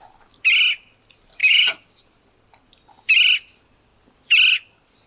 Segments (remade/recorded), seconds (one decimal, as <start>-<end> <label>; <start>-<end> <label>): 0.0-1.4 recorded; 1.4-2.0 remade; 2.0-5.1 recorded